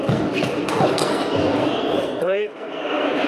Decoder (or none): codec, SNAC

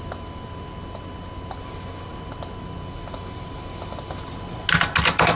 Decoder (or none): none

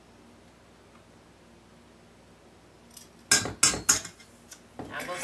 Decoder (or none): none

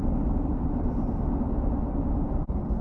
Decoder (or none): none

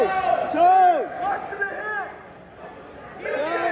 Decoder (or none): none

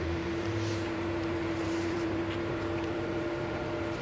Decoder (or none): vocoder, BigVGAN v2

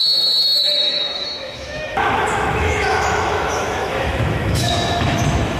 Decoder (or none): autoencoder, DAC-VAE